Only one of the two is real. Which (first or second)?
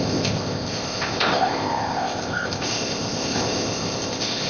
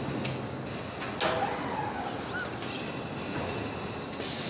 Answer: second